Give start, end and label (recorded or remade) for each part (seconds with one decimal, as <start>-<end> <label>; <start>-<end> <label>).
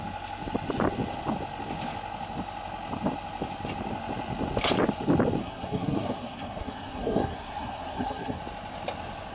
0.0-5.4 recorded; 5.4-8.4 remade; 8.4-9.3 recorded